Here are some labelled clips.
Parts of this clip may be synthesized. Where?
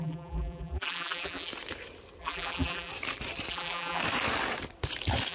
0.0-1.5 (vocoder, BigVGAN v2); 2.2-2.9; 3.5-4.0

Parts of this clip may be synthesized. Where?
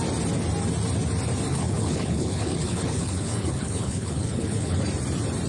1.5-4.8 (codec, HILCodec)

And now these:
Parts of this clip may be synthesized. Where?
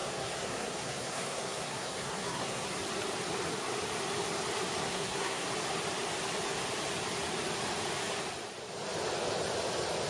0.0-2.7 (codec, SNAC); 4.8-5.5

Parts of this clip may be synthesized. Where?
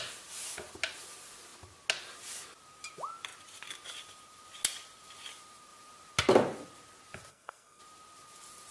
7.3-7.8 (codec, SNAC)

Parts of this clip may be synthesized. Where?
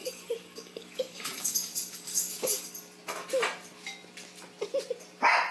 0.0-2.6 (codec, DAC)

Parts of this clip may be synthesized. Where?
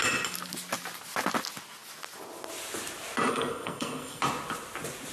3.3-4.2 (codec, SNAC)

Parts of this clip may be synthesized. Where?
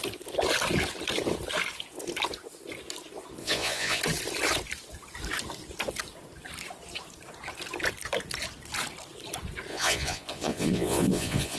3.4-4.0 (vocoder, Vocos); 9.7-11.6